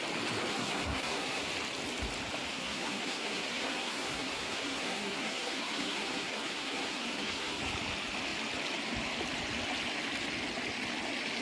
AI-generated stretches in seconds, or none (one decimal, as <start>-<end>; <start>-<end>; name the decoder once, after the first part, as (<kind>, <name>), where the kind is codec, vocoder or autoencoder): 0.5-1.5 (codec, SNAC); 2.5-7.6